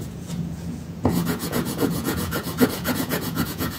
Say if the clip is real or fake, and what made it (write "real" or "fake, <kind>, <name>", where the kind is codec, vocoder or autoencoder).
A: fake, vocoder, Vocos